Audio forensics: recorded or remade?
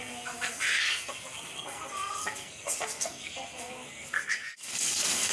remade